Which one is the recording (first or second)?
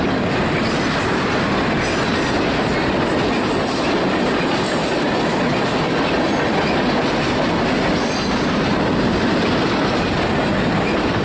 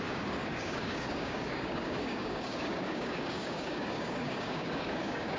first